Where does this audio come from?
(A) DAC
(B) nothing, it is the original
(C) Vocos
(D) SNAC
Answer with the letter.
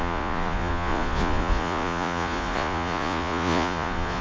C